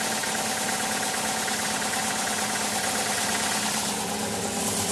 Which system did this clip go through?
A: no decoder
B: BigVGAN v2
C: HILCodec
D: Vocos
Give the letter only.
A